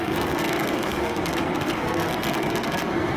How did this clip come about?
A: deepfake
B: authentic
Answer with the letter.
A